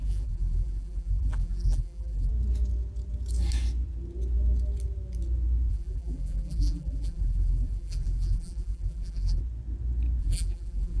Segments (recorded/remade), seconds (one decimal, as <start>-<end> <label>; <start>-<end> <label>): 0.0-2.3 remade; 2.3-5.7 recorded; 5.7-9.4 remade; 9.4-10.2 recorded; 10.2-11.0 remade

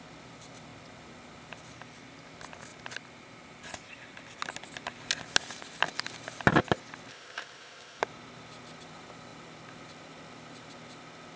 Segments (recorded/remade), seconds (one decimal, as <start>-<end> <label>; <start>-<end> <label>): 0.0-7.1 recorded; 7.1-8.0 remade; 8.0-11.4 recorded

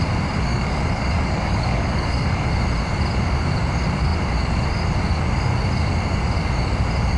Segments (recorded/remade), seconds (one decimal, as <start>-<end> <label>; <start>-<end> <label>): 0.0-0.5 recorded; 0.5-2.5 remade; 2.5-7.2 recorded

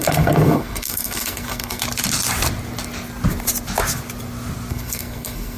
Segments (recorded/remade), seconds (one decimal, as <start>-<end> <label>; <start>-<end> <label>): 0.0-1.8 remade; 1.8-4.7 recorded; 4.7-5.6 remade

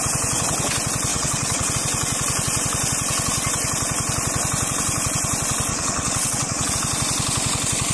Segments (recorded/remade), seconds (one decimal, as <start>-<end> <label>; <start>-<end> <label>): 0.0-1.1 recorded; 1.1-1.7 remade; 1.7-5.7 recorded; 5.7-6.7 remade; 6.7-7.9 recorded

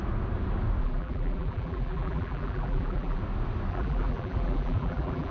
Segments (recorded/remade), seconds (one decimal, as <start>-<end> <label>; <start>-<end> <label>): 0.0-0.8 recorded; 0.8-3.2 remade; 3.2-3.7 recorded; 3.7-5.3 remade

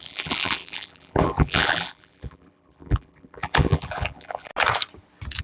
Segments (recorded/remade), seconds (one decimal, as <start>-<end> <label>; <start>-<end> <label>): 0.0-4.5 remade; 4.5-5.4 recorded

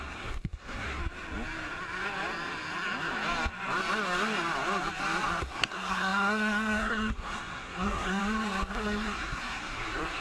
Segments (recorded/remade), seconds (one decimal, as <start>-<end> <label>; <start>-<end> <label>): 0.0-1.0 remade; 1.0-5.4 recorded; 5.4-8.2 remade; 8.2-8.7 recorded; 8.7-10.2 remade